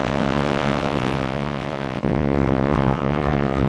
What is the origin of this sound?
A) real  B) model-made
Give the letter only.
B